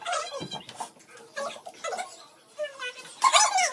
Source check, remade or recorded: recorded